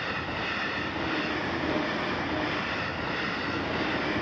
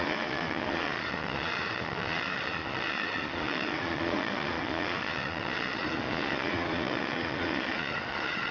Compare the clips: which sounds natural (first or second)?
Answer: first